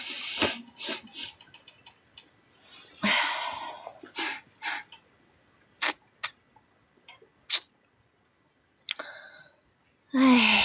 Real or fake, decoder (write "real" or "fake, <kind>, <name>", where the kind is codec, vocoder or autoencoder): real